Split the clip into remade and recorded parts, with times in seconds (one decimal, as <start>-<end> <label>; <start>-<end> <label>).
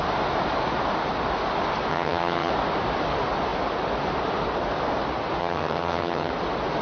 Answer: 0.0-1.9 recorded; 1.9-2.5 remade; 2.5-5.4 recorded; 5.4-6.3 remade; 6.3-6.8 recorded